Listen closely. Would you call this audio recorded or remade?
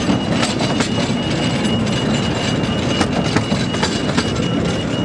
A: recorded